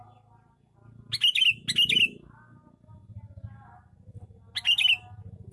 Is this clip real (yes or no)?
yes